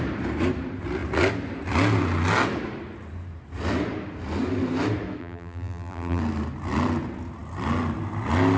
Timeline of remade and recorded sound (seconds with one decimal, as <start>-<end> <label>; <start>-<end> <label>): 0.0-5.2 recorded; 5.2-6.2 remade; 6.2-8.6 recorded